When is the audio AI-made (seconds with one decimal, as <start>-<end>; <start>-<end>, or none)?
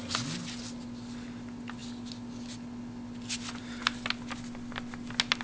none